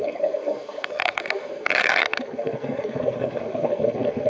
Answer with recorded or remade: remade